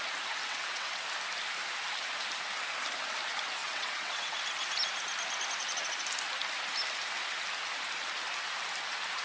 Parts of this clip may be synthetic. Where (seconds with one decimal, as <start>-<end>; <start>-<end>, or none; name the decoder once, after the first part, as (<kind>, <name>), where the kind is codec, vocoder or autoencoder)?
0.4-1.0 (vocoder, WaveNeXt); 3.6-4.4